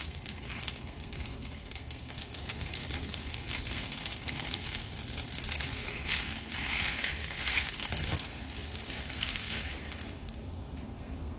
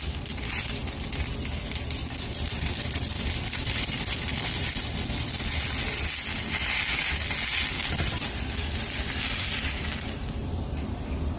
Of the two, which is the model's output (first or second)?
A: first